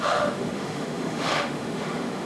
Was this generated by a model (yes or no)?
yes